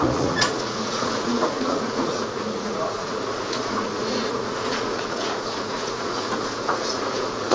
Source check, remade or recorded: remade